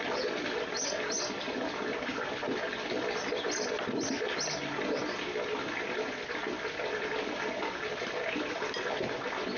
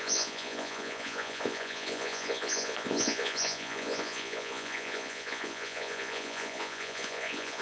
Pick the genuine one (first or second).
first